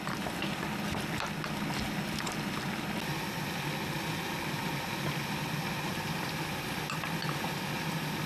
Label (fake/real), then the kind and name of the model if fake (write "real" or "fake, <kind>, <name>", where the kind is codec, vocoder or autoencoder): real